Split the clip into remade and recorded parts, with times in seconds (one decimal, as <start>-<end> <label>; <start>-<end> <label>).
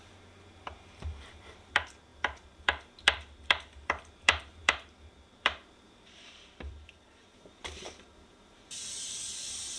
0.0-9.8 remade